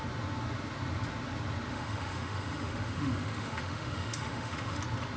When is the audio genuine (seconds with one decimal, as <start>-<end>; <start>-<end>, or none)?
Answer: 0.0-1.7; 4.8-5.2

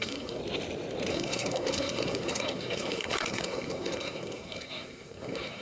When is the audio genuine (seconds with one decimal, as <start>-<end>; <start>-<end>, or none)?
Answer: 0.4-1.1